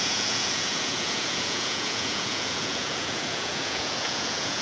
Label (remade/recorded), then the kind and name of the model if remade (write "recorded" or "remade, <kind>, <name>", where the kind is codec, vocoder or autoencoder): remade, vocoder, Vocos